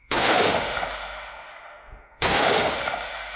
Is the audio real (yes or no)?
no